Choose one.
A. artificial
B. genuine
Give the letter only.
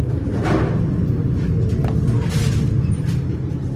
B